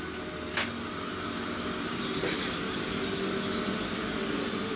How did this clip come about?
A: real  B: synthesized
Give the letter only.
A